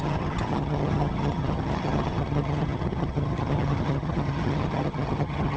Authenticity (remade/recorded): remade